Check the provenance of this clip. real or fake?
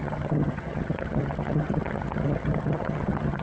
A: fake